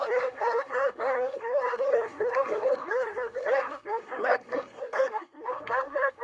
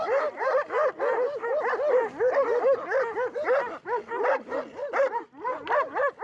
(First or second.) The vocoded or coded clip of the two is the first